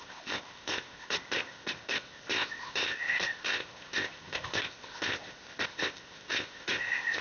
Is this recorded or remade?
remade